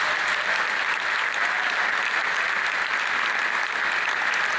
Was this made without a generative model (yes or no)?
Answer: yes